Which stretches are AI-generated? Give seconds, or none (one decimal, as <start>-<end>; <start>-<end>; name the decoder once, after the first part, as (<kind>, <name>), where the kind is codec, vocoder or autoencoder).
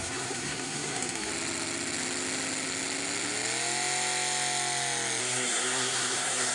0.0-1.3 (codec, SNAC); 5.2-6.5